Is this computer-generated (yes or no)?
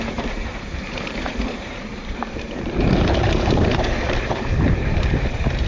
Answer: yes